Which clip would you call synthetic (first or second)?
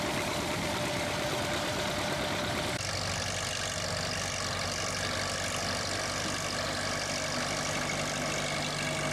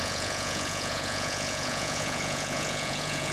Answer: second